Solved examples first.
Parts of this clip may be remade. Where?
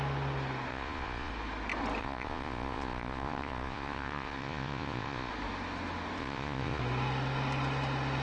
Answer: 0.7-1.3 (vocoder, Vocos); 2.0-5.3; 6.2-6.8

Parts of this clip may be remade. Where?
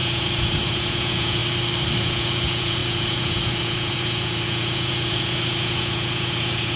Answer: 0.0-1.4 (vocoder, Vocos); 2.0-6.8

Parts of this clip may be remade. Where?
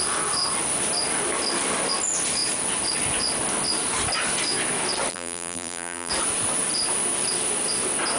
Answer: 5.1-6.1 (vocoder, BigVGAN v2)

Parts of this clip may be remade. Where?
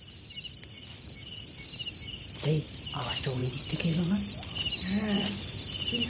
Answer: none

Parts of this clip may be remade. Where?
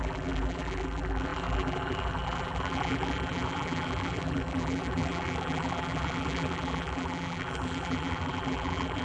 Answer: 0.0-9.0 (vocoder, BigVGAN v2)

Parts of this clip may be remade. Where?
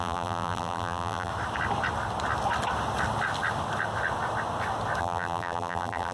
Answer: 0.0-1.3 (vocoder, BigVGAN v2); 5.0-6.1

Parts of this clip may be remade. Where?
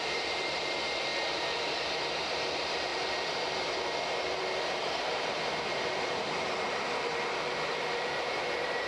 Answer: 0.0-1.1 (vocoder, BigVGAN v2); 2.3-8.9